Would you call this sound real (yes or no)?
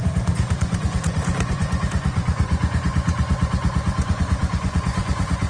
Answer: no